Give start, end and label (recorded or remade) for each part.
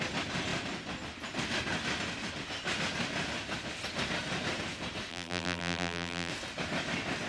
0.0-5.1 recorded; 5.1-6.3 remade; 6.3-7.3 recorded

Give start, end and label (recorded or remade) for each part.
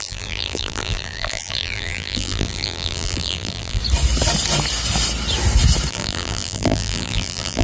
0.0-3.8 remade; 3.8-5.9 recorded; 5.9-7.6 remade